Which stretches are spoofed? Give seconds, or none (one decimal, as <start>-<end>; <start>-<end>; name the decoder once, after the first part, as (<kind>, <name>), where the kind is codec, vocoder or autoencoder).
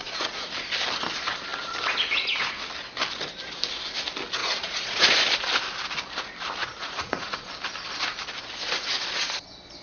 0.0-0.5 (vocoder, Vocos); 4.4-5.1; 6.6-7.5